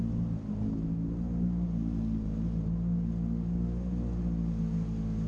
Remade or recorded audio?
recorded